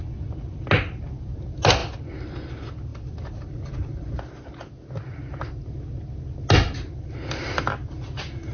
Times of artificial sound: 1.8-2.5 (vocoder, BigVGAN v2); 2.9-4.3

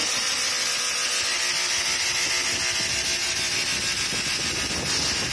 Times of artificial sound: 0.0-0.7 (vocoder, BigVGAN v2); 3.2-4.0

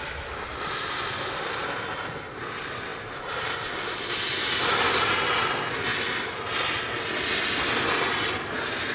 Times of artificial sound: none

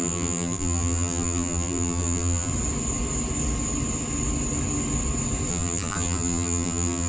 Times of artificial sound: 0.0-2.5 (vocoder, BigVGAN v2); 5.5-7.1

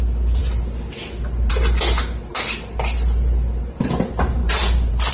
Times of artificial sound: 4.4-5.1 (vocoder, BigVGAN v2)

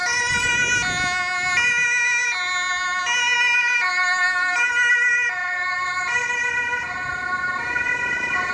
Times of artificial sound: 0.0-0.5 (vocoder, BigVGAN v2); 4.9-8.5